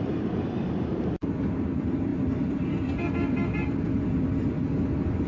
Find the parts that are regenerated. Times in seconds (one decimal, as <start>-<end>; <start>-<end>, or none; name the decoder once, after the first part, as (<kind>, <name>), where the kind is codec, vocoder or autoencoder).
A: 0.0-2.1 (vocoder, BigVGAN v2)